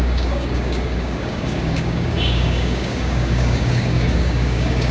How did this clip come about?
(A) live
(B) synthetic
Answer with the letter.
B